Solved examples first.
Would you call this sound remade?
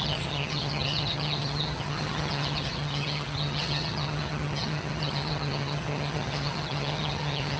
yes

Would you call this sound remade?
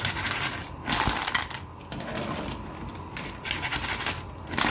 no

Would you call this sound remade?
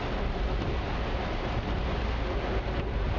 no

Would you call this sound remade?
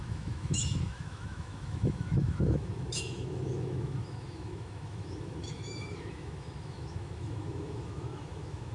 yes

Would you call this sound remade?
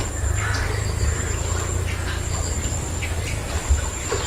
no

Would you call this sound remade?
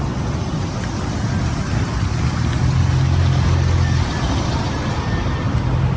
no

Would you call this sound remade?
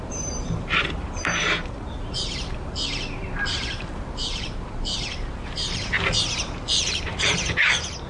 yes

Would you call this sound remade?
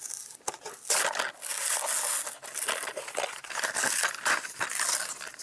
no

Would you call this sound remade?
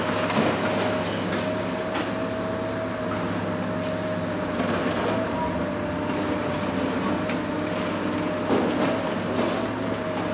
no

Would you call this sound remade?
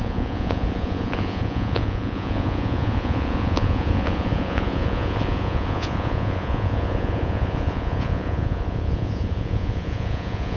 yes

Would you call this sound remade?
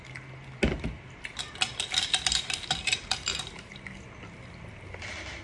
no